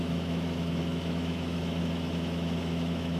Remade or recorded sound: remade